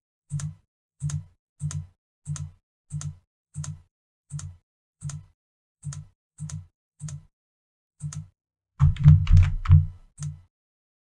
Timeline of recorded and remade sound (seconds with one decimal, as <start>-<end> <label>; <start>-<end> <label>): 0.0-1.5 remade; 1.5-3.3 recorded; 3.3-9.2 remade; 9.2-10.5 recorded; 10.5-11.0 remade